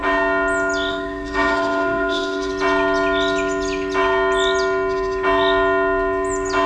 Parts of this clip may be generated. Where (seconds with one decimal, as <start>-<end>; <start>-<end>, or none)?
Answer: 0.9-2.5